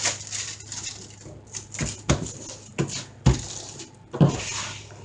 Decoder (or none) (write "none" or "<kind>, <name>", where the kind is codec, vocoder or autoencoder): none